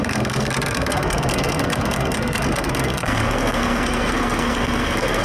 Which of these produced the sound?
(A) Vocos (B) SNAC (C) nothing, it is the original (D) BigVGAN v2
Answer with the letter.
B